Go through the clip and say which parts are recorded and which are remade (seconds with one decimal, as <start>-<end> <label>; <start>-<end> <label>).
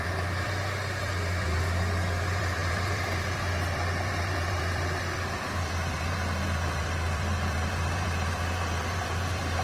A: 0.0-9.6 remade